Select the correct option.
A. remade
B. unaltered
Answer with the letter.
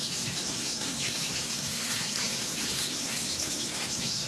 A